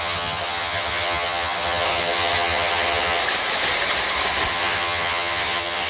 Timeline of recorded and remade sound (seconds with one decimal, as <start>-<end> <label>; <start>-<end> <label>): 0.0-3.2 remade; 3.2-4.5 recorded; 4.5-5.9 remade

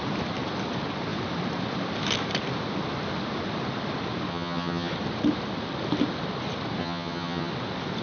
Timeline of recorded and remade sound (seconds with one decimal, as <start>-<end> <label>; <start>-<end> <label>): 0.0-4.3 recorded; 4.3-4.9 remade; 4.9-6.8 recorded; 6.8-7.5 remade; 7.5-8.0 recorded

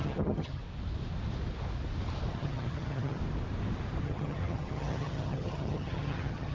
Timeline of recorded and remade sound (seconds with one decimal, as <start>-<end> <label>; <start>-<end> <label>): 0.0-0.6 remade; 0.6-2.3 recorded; 2.3-3.2 remade; 3.2-4.0 recorded; 4.0-6.5 remade

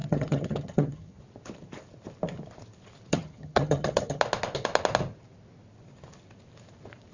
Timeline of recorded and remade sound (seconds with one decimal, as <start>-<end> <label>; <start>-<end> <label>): 0.0-1.2 remade; 1.2-3.1 recorded; 3.1-4.2 remade; 4.2-7.1 recorded

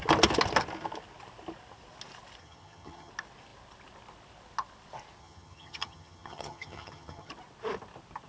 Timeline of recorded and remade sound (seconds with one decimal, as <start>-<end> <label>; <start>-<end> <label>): 0.0-2.4 recorded; 2.4-3.1 remade; 3.1-5.2 recorded; 5.2-7.3 remade; 7.3-8.3 recorded

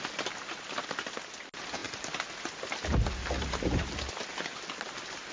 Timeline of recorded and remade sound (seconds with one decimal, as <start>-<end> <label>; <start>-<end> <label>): 0.0-5.3 recorded

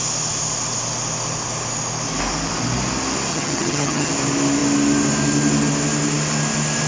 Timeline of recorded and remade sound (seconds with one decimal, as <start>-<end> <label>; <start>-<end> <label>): 0.0-3.3 recorded; 3.3-4.1 remade; 4.1-6.9 recorded

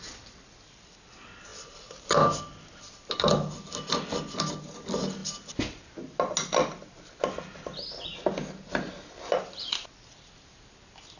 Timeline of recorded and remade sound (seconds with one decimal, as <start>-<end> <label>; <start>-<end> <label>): 0.0-11.2 recorded